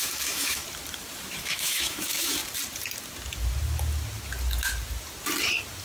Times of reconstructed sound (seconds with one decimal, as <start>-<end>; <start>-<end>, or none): 0.0-0.6; 1.4-2.4